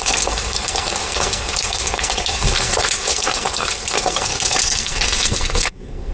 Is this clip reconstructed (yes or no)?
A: yes